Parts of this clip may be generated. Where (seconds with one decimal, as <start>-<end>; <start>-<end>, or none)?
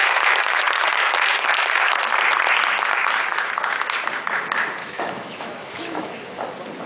0.0-2.0; 4.8-6.4